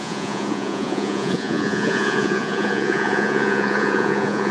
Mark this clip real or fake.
fake